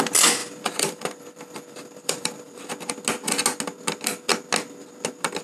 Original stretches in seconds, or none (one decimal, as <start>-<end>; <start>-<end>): 0.0-0.4; 2.7-5.4